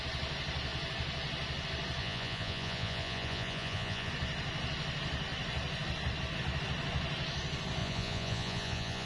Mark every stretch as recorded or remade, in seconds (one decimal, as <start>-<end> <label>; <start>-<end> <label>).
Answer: 0.0-2.0 recorded; 2.0-4.1 remade; 4.1-7.8 recorded; 7.8-9.1 remade